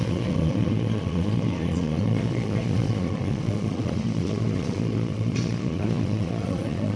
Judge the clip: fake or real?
fake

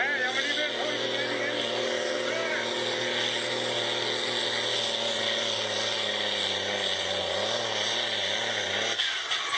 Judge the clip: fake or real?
real